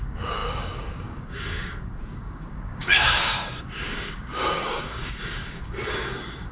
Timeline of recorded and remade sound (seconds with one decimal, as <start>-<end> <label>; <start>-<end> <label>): 0.0-6.5 remade